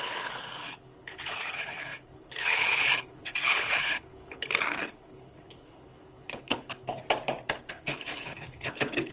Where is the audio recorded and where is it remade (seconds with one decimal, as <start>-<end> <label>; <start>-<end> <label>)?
0.0-7.0 remade; 7.0-7.7 recorded; 7.7-9.1 remade